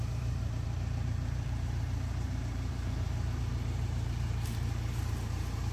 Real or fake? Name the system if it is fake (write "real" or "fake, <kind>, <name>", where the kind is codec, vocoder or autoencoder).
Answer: fake, vocoder, BigVGAN v2